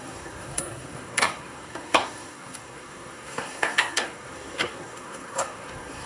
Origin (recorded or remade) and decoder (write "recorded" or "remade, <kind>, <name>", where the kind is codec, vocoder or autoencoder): remade, codec, SNAC